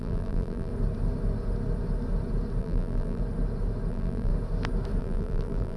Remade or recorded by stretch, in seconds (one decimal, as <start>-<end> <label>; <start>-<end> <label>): 0.0-0.7 remade; 0.7-2.6 recorded; 2.6-3.2 remade; 3.2-3.9 recorded; 3.9-4.3 remade; 4.3-5.0 recorded; 5.0-5.8 remade